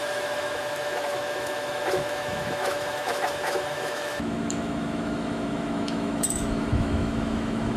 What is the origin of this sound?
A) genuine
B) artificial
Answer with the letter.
B